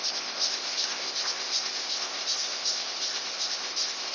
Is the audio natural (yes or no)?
no